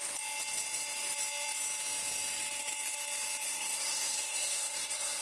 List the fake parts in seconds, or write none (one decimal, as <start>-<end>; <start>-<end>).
3.4-5.2